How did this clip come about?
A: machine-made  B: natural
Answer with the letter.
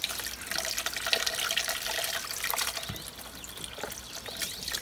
B